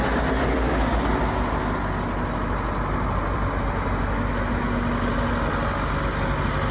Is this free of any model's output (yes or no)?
yes